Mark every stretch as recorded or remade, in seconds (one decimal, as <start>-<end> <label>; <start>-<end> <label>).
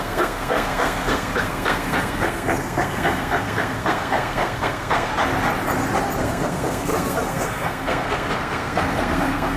0.0-5.1 remade; 5.1-6.2 recorded; 6.2-9.6 remade